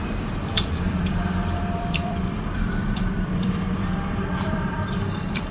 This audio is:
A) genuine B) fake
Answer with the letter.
B